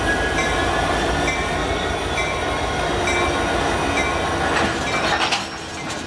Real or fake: real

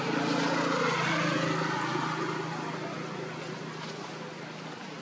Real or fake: real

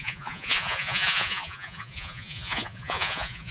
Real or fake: fake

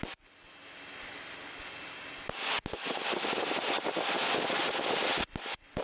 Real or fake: real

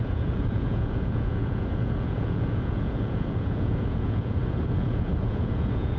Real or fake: fake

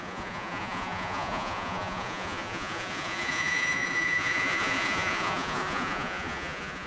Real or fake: fake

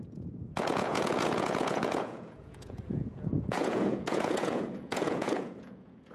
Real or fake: fake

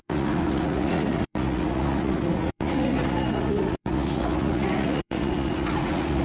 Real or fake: fake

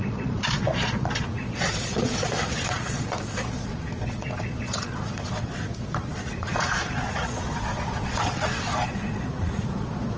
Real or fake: fake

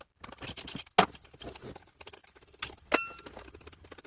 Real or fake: real